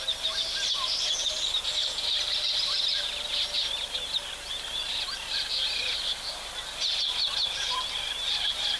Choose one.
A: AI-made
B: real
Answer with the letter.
B